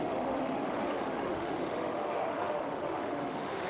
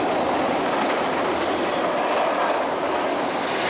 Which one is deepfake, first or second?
first